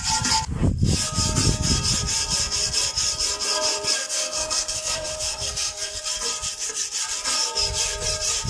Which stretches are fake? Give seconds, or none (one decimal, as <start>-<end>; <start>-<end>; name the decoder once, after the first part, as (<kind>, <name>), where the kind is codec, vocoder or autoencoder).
4.0-6.0 (codec, SNAC)